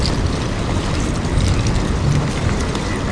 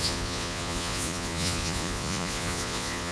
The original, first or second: first